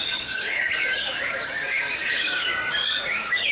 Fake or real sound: fake